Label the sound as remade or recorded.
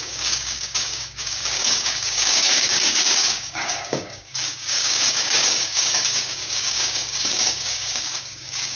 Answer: remade